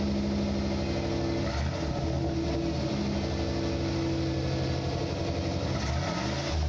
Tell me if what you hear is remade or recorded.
recorded